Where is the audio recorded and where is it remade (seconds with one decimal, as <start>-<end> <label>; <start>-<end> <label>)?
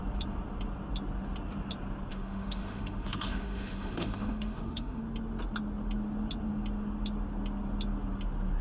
0.0-2.1 recorded; 2.1-5.0 remade; 5.0-8.6 recorded